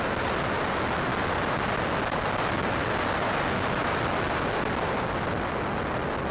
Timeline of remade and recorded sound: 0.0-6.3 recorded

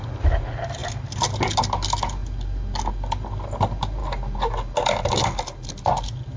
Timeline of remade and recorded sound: 0.0-6.4 recorded

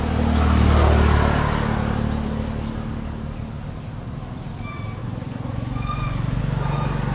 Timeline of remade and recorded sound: 0.0-5.0 recorded; 5.0-6.4 remade; 6.4-7.1 recorded